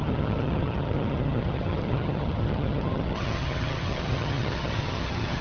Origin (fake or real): fake